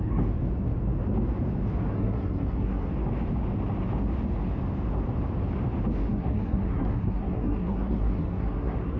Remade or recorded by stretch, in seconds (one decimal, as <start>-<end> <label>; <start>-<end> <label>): 0.0-1.9 recorded; 1.9-2.9 remade; 2.9-6.1 recorded; 6.1-9.0 remade